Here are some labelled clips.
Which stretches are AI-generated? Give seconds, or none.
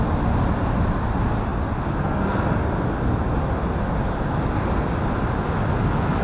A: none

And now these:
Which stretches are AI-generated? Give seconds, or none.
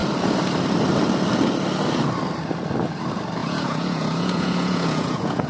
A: 3.4-5.5 (vocoder, Vocos)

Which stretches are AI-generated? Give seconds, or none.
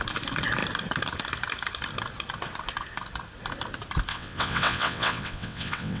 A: 4.1-6.0 (vocoder, WaveNeXt)